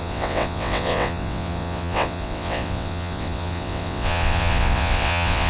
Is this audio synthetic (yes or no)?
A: yes